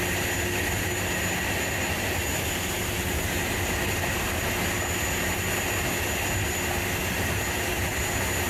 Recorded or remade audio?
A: recorded